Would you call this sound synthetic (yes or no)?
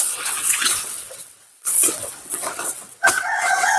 yes